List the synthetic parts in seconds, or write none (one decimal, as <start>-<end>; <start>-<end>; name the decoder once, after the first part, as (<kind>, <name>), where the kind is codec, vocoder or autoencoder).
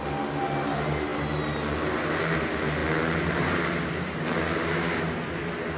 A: none